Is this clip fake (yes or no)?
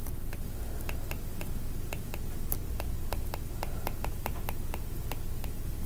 no